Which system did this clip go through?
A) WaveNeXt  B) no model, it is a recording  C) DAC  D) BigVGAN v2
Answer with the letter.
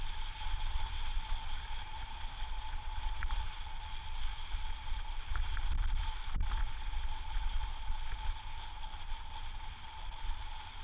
B